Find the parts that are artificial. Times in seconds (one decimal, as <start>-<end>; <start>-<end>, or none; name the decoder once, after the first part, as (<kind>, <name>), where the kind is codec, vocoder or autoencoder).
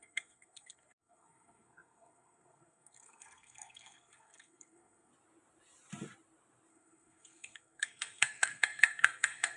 0.0-5.1 (codec, SNAC); 6.7-9.6